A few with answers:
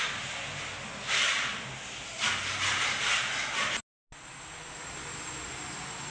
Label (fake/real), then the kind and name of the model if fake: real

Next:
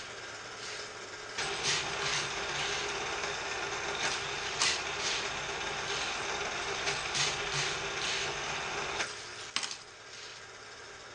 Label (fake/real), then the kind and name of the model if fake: real